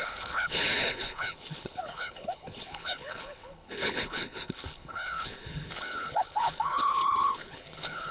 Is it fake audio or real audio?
fake